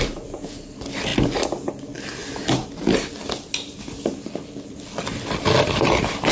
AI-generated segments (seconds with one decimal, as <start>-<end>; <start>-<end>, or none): none